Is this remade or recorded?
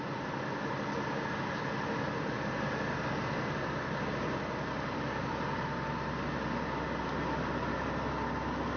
recorded